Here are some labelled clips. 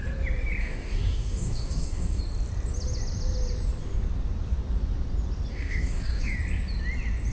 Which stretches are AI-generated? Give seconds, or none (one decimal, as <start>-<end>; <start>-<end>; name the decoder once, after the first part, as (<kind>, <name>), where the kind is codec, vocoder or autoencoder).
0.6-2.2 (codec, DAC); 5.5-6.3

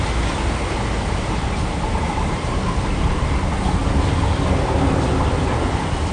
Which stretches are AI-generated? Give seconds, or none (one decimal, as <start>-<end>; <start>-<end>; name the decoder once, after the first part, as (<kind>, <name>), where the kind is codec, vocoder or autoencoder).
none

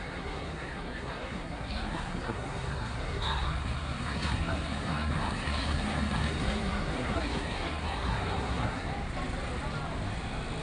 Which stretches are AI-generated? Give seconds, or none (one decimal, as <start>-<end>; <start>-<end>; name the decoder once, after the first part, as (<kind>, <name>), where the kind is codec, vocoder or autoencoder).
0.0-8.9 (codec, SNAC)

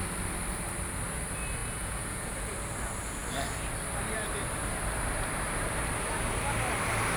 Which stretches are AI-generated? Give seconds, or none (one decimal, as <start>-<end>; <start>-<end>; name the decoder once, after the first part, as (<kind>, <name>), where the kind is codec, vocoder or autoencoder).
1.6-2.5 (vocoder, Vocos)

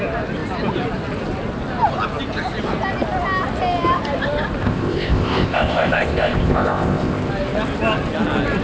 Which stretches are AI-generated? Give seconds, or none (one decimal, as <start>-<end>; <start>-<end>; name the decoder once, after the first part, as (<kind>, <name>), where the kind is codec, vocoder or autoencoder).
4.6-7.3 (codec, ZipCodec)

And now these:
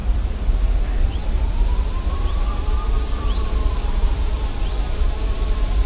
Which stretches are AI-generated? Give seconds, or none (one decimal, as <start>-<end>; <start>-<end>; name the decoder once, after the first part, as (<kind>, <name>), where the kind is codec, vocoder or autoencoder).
0.0-5.9 (vocoder, BigVGAN v2)

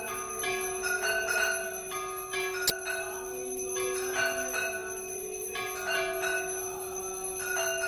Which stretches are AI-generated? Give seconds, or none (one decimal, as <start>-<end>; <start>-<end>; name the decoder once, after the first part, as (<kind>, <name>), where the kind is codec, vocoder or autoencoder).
none

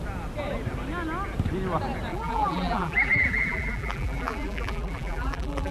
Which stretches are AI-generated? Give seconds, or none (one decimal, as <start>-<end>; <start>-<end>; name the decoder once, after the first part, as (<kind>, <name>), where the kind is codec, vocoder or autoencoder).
2.1-5.7 (vocoder, BigVGAN v2)